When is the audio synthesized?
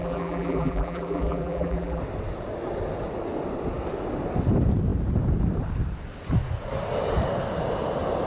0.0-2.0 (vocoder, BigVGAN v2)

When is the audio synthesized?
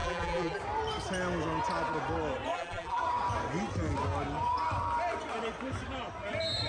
0.0-0.6 (vocoder, BigVGAN v2); 2.5-3.0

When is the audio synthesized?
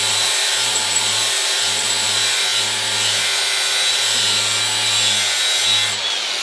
0.0-2.5 (vocoder, BigVGAN v2)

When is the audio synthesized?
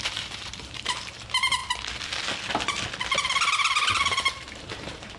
0.0-1.6 (vocoder, BigVGAN v2); 3.9-5.2